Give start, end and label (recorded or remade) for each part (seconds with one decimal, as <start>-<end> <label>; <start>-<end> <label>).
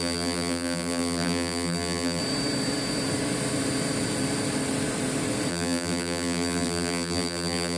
0.0-2.2 remade; 2.2-5.5 recorded; 5.5-7.8 remade